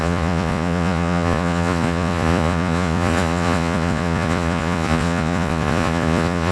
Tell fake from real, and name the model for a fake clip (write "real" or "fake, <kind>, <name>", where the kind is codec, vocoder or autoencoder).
fake, vocoder, Vocos